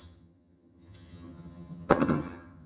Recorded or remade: remade